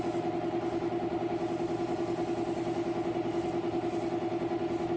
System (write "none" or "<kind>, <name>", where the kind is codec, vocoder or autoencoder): none